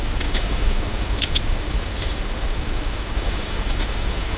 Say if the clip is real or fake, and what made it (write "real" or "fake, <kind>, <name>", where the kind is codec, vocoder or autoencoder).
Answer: fake, autoencoder, DAC-VAE